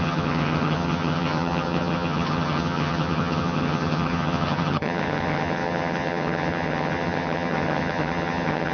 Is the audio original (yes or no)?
no